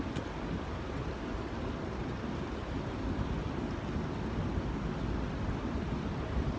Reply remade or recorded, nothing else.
recorded